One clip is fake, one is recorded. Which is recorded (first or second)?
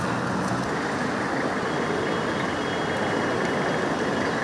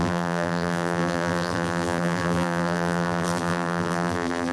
first